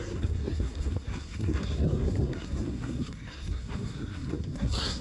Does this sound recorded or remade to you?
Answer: remade